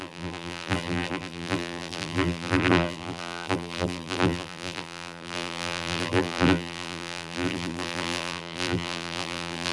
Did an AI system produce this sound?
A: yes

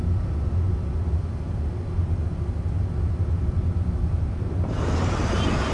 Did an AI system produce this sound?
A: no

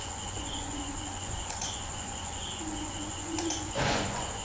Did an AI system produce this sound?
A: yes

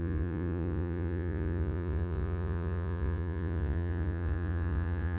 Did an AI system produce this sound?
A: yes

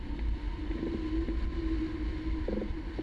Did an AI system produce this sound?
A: no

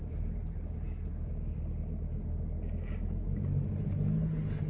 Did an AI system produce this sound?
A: no